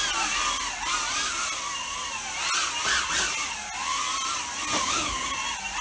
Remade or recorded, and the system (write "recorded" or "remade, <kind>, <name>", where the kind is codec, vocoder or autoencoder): recorded